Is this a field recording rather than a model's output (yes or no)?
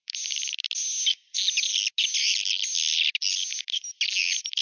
yes